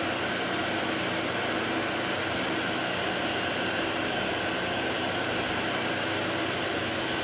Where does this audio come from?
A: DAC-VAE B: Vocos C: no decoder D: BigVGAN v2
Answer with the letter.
C